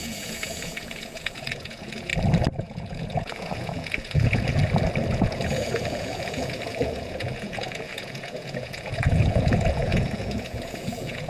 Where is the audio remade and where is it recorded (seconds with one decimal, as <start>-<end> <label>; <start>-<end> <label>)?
0.0-2.1 remade; 2.1-2.6 recorded; 2.6-4.6 remade; 4.6-5.1 recorded; 5.1-11.3 remade